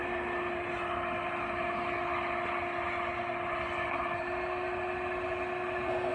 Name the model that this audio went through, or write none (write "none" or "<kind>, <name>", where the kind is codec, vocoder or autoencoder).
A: none